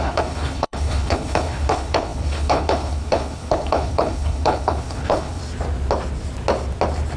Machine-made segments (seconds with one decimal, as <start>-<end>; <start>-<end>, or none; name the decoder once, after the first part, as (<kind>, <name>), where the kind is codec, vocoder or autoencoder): 0.0-5.4 (codec, HILCodec)